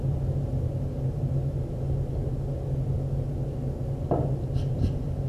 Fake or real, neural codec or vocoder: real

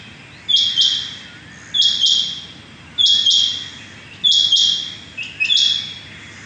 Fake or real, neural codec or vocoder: real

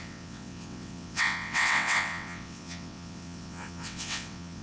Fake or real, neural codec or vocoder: fake, vocoder, WaveNeXt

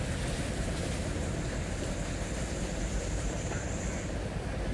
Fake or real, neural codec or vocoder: real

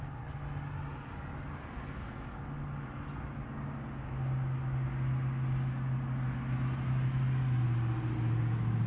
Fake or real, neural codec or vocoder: real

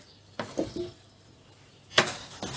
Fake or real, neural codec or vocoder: real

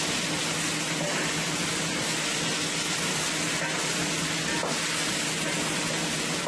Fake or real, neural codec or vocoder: real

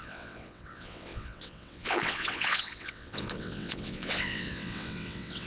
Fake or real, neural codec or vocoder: fake, vocoder, WaveNeXt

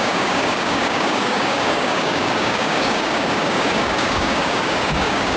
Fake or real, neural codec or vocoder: fake, codec, DAC